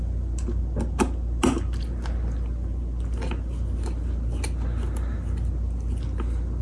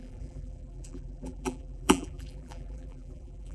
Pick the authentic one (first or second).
first